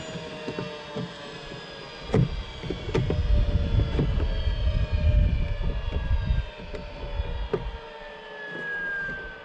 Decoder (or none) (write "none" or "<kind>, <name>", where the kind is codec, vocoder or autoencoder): none